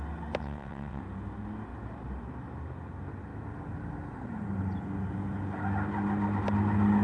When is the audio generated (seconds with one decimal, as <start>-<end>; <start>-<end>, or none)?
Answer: 0.4-1.0